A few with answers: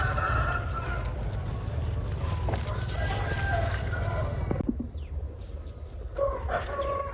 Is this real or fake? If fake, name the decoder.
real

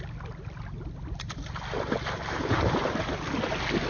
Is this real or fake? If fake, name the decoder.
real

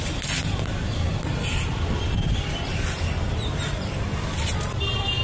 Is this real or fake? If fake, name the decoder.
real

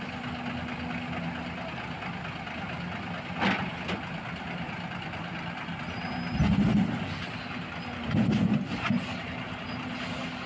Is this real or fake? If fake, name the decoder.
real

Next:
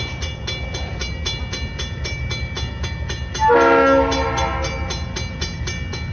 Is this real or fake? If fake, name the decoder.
real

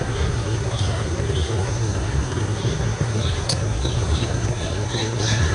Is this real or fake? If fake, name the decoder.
fake, codec, SNAC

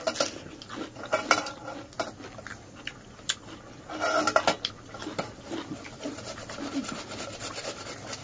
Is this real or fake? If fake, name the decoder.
real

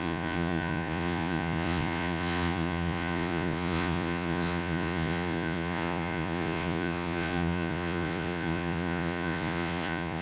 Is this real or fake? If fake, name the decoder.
fake, vocoder, Vocos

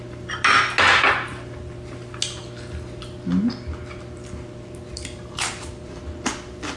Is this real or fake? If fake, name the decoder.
real